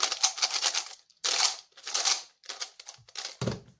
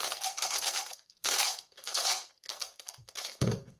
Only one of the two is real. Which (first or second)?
first